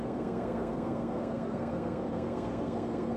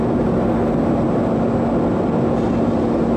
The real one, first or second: second